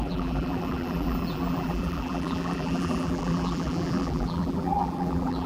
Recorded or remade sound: remade